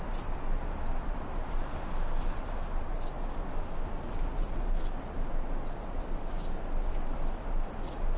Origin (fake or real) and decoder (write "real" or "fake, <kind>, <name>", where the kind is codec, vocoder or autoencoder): real